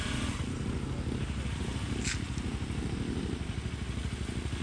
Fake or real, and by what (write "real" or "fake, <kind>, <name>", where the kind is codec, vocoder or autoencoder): real